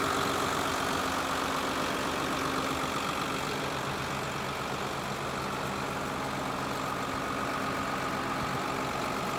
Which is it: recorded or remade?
recorded